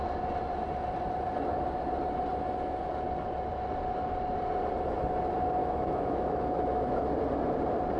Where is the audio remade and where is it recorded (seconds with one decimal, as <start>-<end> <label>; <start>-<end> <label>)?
0.0-5.6 recorded; 5.6-7.1 remade; 7.1-8.0 recorded